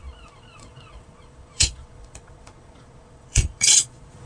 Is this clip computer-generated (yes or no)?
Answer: yes